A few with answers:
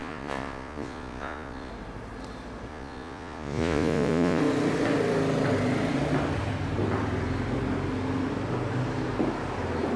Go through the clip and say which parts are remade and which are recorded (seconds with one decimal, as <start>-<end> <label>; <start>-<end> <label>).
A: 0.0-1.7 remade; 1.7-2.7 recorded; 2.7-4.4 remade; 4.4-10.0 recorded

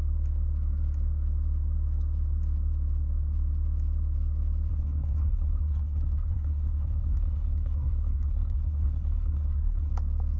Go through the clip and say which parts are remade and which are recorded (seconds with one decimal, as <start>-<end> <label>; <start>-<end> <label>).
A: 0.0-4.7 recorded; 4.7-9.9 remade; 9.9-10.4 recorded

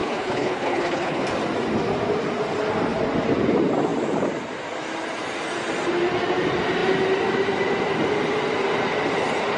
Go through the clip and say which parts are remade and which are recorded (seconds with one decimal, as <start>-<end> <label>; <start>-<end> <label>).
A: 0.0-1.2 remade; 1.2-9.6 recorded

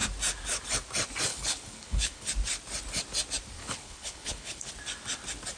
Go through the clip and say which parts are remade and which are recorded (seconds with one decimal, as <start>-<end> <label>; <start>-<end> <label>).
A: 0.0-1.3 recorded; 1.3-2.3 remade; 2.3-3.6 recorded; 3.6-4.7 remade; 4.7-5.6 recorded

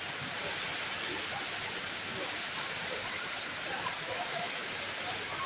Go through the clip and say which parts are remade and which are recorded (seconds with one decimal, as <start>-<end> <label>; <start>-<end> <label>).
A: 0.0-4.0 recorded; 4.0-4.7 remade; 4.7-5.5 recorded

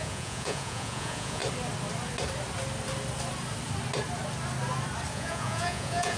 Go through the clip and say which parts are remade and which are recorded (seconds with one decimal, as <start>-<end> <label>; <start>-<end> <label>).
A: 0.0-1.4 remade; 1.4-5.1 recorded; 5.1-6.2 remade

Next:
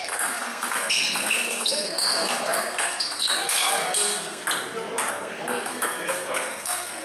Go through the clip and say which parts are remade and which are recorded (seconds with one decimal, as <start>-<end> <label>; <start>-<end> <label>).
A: 0.0-4.4 remade; 4.4-5.1 recorded; 5.1-7.0 remade